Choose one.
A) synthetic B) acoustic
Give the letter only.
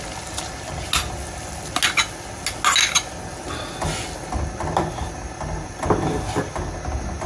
B